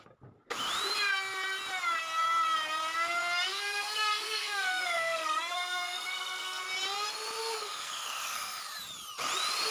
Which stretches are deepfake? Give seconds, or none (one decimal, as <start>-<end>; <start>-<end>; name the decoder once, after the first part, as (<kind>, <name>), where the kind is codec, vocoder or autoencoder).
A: 3.5-6.6 (codec, SNAC); 7.4-8.6

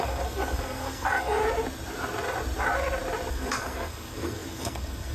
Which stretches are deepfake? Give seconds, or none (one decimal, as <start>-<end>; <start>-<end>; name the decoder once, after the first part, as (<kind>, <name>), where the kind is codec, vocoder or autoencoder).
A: 0.0-1.4 (codec, SNAC); 3.3-5.1

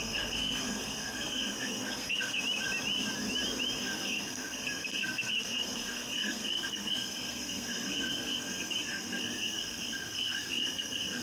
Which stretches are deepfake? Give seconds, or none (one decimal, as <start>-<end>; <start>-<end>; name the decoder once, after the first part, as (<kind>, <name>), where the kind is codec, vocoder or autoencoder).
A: 0.0-2.4 (codec, SNAC); 3.8-11.2